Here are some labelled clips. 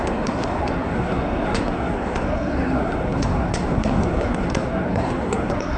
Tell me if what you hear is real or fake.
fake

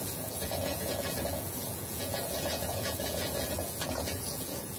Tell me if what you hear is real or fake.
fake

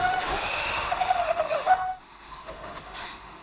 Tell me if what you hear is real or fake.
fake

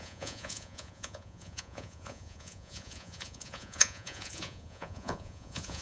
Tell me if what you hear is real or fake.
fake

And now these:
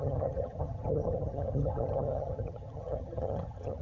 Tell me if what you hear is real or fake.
fake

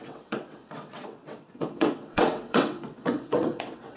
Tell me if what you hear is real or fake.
fake